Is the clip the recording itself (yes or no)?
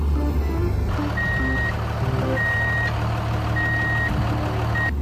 yes